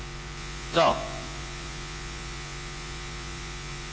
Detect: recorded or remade remade